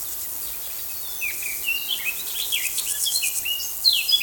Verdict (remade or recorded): recorded